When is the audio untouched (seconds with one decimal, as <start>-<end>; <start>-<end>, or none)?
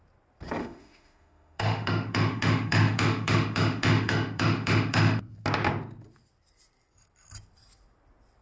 0.0-0.6; 5.2-8.4